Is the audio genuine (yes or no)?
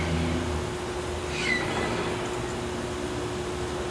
yes